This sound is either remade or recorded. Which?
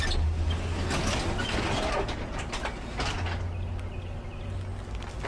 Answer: recorded